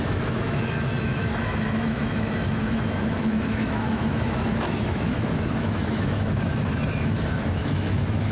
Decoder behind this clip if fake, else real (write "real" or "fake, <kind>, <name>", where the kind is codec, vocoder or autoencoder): fake, autoencoder, DAC-VAE